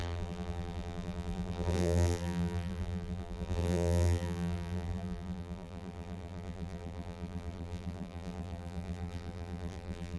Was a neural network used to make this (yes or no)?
yes